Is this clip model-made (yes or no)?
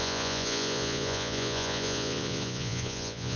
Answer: yes